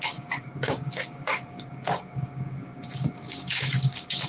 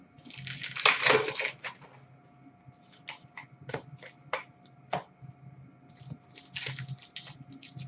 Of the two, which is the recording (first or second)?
second